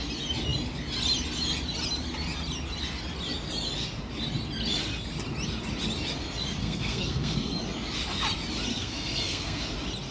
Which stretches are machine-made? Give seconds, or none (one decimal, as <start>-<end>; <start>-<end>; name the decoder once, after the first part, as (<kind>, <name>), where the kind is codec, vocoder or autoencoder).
6.6-7.5 (codec, SNAC); 8.7-9.6